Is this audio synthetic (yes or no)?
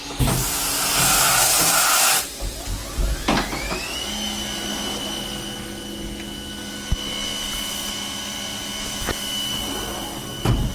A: no